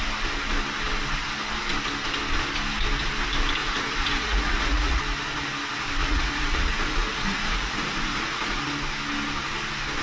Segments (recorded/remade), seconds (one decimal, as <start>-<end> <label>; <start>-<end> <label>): 0.0-3.6 recorded; 3.6-5.0 remade; 5.0-6.0 recorded; 6.0-8.6 remade; 8.6-10.0 recorded

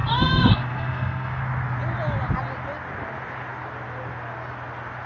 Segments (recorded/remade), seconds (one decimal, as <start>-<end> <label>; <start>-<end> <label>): 0.0-1.4 remade; 1.4-5.1 recorded

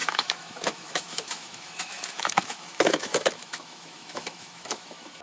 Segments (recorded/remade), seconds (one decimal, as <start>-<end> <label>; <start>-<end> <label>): 0.0-5.2 remade

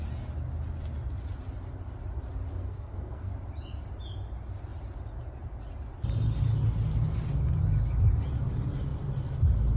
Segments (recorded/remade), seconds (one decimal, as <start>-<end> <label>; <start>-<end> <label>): 0.0-2.5 recorded; 2.5-3.3 remade; 3.3-9.8 recorded

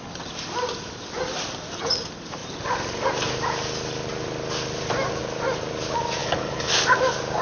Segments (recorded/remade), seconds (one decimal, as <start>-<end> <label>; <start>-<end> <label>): 0.0-6.2 recorded; 6.2-6.7 remade; 6.7-7.4 recorded